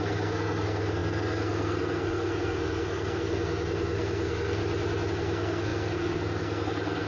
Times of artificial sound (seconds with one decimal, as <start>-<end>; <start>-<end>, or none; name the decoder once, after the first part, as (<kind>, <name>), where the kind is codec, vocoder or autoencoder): 0.0-4.6 (codec, SNAC); 5.1-7.1